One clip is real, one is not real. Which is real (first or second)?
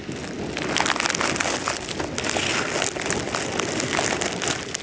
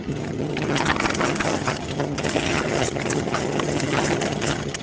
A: first